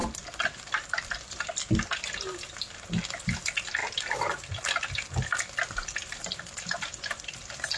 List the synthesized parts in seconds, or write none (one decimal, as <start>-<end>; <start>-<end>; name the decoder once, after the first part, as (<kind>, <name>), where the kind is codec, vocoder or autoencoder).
none